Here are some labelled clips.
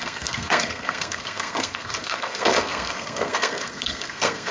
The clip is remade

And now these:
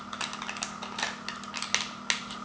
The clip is recorded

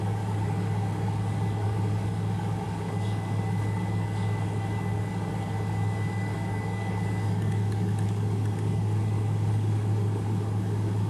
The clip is remade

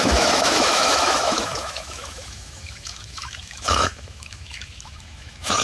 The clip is remade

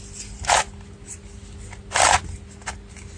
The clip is recorded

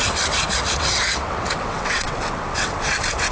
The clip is remade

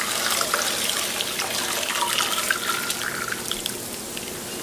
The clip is recorded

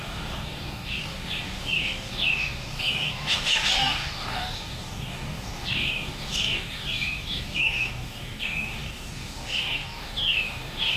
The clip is remade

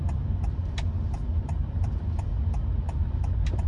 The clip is recorded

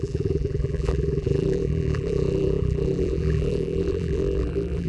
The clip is remade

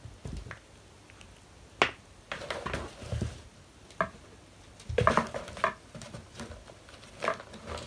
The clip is recorded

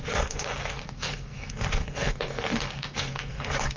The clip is remade